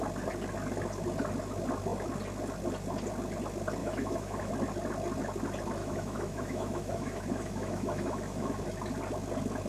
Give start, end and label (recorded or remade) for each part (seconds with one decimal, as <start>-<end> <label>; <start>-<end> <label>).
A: 0.0-3.8 recorded; 3.8-4.5 remade; 4.5-5.8 recorded; 5.8-8.6 remade; 8.6-9.7 recorded

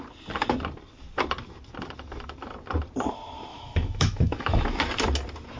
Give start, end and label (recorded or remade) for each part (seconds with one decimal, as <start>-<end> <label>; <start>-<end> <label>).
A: 0.0-3.5 recorded; 3.5-4.6 remade; 4.6-5.6 recorded

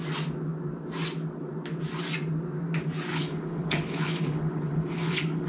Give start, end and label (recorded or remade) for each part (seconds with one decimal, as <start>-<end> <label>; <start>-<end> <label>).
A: 0.0-3.1 recorded; 3.1-5.5 remade

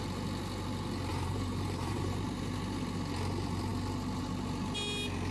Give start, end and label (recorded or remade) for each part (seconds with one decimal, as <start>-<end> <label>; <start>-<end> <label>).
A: 0.0-1.1 recorded; 1.1-2.0 remade; 2.0-5.3 recorded

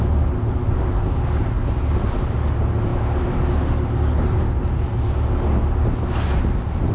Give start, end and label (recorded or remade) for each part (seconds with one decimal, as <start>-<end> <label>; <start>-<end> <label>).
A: 0.0-6.9 recorded